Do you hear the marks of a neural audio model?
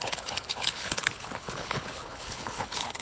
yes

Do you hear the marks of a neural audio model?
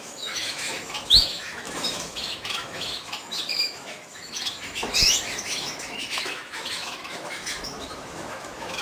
yes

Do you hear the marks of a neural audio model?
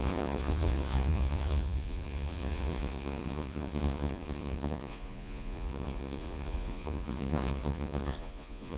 yes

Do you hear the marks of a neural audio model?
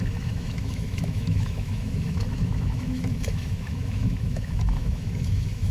yes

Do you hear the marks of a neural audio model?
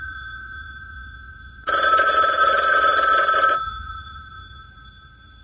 yes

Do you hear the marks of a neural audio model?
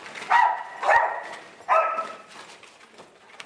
yes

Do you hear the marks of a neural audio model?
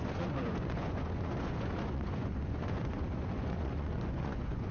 yes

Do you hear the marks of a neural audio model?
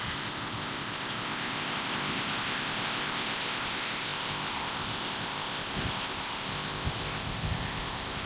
yes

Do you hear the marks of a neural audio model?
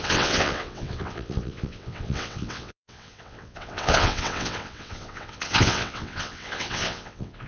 yes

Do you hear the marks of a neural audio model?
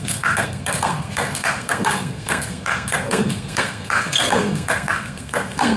yes